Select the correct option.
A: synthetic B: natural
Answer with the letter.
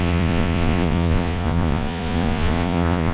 A